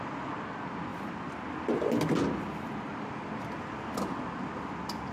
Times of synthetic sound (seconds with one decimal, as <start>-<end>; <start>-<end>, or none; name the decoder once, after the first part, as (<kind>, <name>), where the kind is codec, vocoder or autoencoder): none